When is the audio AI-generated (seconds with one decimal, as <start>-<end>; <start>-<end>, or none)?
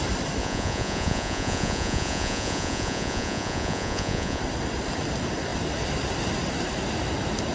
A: 0.4-4.4